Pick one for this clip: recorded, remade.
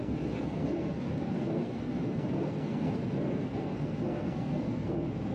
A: remade